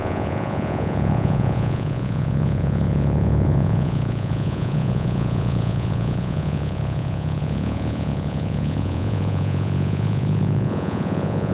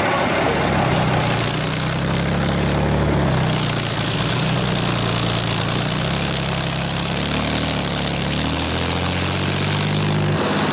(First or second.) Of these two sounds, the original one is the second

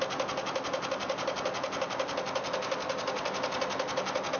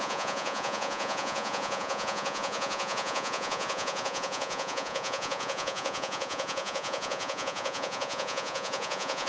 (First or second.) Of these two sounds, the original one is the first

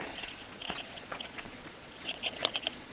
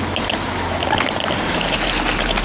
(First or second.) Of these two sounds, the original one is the second